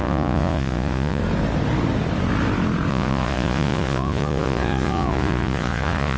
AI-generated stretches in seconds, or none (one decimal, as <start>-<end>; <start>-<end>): 0.0-1.2; 2.9-6.2